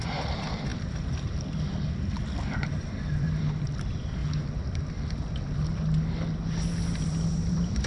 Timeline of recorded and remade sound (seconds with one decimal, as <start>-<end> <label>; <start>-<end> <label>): 0.0-4.2 remade; 4.2-7.0 recorded; 7.0-7.9 remade